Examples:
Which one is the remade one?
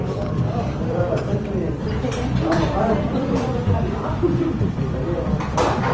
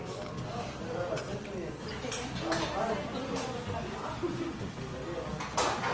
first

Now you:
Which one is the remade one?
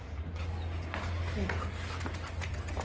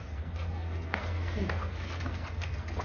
second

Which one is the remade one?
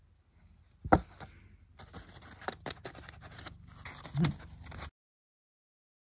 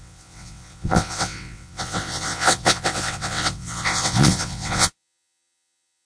second